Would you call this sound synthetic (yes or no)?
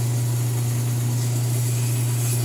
no